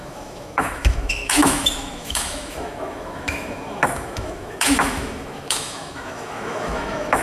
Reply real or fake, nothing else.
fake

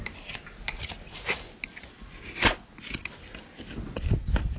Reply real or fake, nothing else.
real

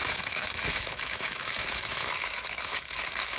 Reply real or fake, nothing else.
fake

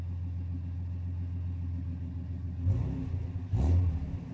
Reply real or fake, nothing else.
real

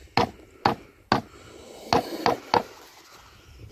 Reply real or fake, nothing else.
real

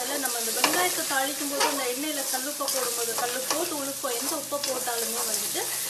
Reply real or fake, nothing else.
real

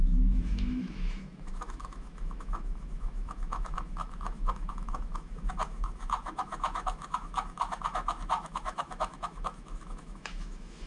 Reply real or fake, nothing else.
fake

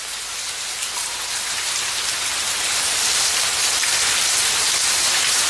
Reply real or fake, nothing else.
real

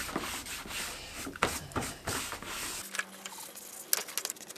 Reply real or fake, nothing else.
real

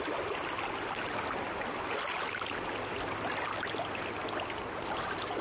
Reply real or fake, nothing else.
real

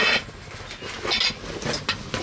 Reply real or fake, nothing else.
real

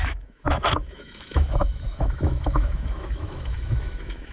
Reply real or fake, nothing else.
fake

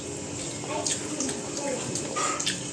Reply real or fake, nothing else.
real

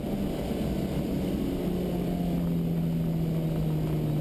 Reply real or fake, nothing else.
real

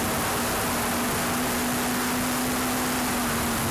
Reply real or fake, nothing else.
real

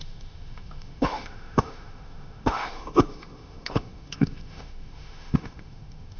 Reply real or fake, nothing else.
fake